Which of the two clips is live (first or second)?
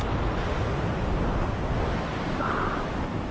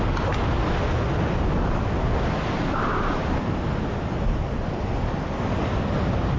second